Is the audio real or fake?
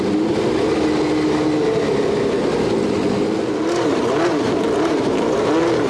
real